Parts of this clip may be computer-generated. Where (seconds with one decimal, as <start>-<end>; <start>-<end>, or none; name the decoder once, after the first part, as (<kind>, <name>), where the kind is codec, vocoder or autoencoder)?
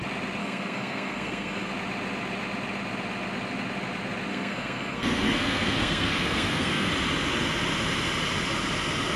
0.4-1.7 (codec, SNAC); 4.3-6.9